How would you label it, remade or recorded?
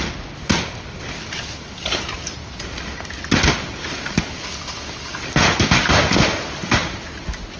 recorded